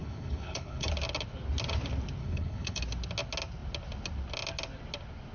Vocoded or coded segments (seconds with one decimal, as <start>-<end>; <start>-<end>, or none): 0.0-0.9; 2.2-2.8